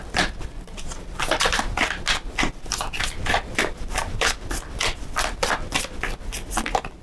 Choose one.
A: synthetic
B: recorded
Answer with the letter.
B